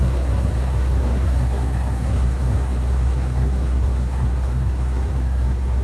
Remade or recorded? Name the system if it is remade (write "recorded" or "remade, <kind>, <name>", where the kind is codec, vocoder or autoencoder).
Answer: remade, codec, SNAC